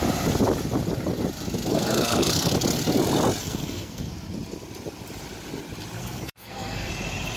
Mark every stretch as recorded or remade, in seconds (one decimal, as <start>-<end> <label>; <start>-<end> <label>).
0.0-1.7 recorded; 1.7-2.5 remade; 2.5-3.4 recorded; 3.4-4.1 remade; 4.1-6.0 recorded; 6.0-6.9 remade; 6.9-7.4 recorded